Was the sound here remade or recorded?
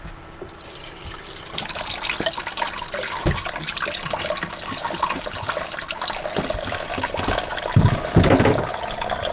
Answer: recorded